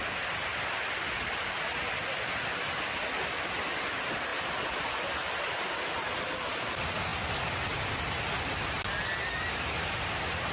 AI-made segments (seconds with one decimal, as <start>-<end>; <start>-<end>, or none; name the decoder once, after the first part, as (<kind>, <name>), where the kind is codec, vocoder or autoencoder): none